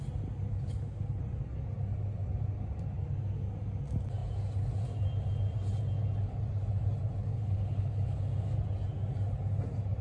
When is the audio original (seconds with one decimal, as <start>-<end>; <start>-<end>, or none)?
0.0-0.5; 1.2-7.3; 8.2-10.0